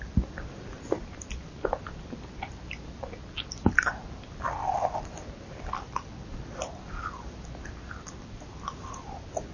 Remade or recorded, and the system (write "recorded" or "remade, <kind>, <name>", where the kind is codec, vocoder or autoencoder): recorded